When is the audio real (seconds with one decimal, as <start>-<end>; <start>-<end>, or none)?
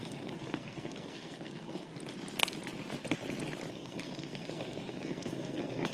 1.9-3.7